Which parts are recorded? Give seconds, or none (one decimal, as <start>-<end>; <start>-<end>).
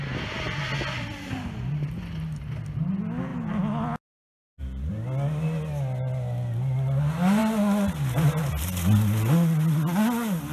0.0-10.5